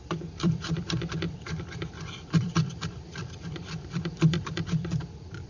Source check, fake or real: fake